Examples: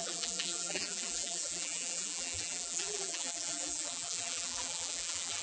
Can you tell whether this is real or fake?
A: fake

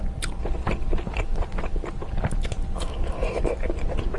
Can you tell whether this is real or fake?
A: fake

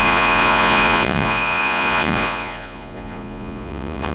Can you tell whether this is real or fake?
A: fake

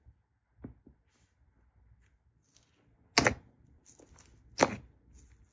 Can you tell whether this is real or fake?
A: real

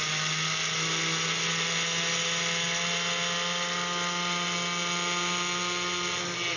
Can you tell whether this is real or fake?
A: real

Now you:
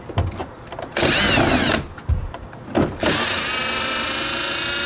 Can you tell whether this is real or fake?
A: real